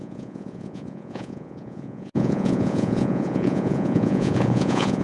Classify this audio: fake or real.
fake